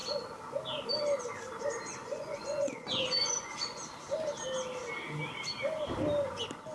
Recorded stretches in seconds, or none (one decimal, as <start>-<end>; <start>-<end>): 0.0-2.0; 3.8-6.7